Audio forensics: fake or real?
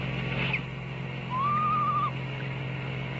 real